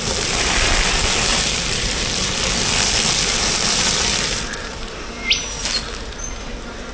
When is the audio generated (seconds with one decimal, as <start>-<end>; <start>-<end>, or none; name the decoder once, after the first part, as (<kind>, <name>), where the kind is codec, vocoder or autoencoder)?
1.3-5.4 (vocoder, BigVGAN v2)